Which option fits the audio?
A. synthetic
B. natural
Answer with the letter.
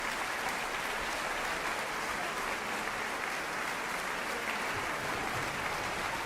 B